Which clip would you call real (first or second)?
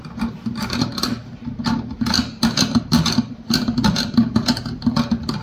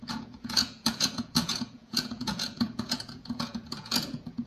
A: first